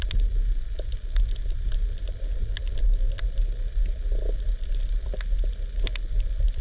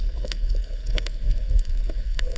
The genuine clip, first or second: first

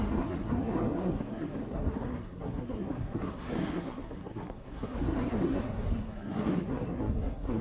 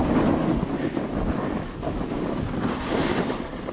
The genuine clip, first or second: second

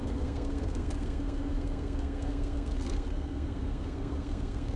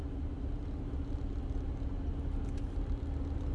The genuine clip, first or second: second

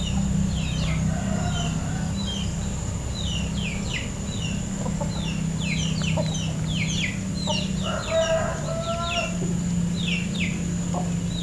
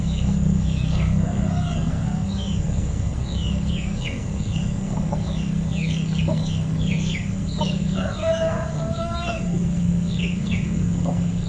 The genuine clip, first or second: first